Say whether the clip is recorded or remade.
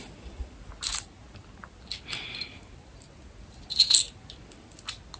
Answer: recorded